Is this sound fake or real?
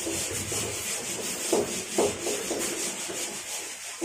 fake